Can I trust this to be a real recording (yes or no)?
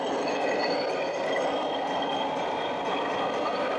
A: yes